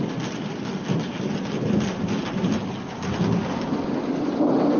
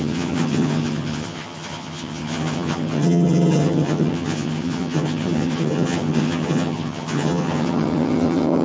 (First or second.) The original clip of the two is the first